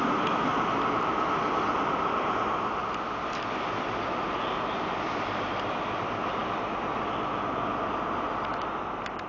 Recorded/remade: recorded